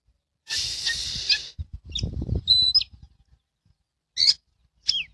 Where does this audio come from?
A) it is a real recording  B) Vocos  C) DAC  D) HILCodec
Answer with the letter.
A